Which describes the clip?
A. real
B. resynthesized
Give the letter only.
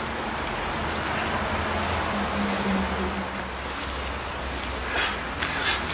A